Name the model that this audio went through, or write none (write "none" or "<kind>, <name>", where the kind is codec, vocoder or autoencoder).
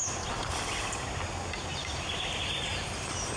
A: none